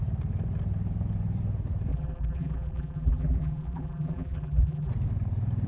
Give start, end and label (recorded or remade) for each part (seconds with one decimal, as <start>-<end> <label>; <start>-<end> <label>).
0.0-1.9 recorded; 1.9-4.9 remade; 4.9-5.7 recorded